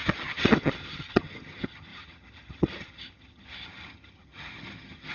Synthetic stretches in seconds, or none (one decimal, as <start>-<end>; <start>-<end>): 0.0-5.1